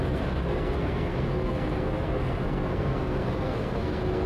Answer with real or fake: fake